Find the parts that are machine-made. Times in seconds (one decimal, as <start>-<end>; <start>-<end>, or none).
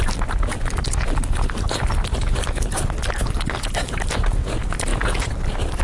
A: none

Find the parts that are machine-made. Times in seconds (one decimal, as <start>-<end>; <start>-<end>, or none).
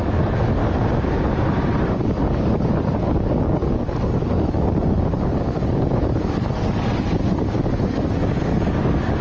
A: 0.0-0.6; 1.8-9.2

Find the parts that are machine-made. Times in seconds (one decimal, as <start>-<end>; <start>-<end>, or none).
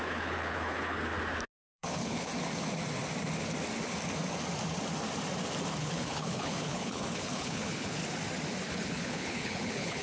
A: 0.0-1.1; 1.6-2.3; 5.8-8.0; 8.7-10.0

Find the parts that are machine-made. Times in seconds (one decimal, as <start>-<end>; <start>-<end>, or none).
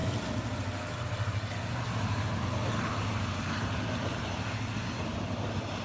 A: 5.1-5.8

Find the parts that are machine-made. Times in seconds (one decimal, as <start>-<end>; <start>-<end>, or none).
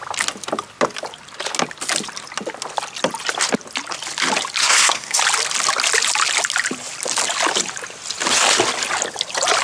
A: 4.6-5.2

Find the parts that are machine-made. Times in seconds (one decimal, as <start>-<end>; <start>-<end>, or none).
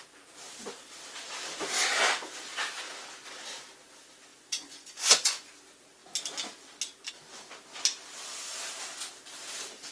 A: 4.3-5.5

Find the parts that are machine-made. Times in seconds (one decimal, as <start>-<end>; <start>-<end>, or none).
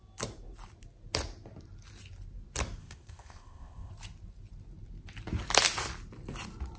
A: 2.8-3.9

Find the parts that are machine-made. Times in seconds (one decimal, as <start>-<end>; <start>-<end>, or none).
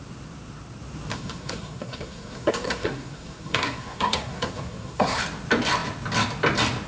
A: 1.1-5.2